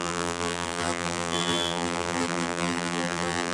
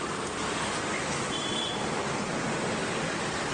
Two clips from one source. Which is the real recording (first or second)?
second